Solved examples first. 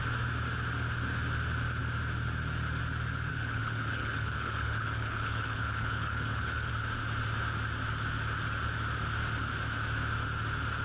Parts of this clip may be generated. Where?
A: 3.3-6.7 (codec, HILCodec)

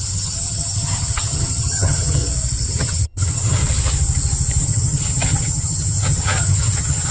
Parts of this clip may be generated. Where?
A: 0.0-2.2 (vocoder, HiFi-GAN); 2.7-3.6; 4.6-7.1

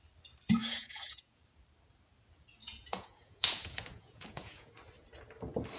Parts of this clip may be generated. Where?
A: 0.6-1.4 (vocoder, Vocos); 2.6-4.7